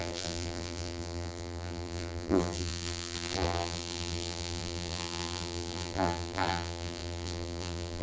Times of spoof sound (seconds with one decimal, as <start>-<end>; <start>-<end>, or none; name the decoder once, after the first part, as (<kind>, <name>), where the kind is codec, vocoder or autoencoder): 0.0-8.0 (vocoder, BigVGAN v2)